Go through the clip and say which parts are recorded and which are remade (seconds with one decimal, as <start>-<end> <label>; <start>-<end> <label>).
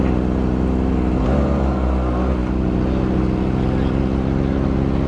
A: 0.0-5.1 recorded